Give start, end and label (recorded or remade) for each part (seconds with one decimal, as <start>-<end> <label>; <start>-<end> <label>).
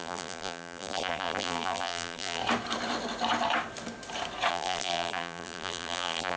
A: 0.0-2.4 remade; 2.4-4.5 recorded; 4.5-6.4 remade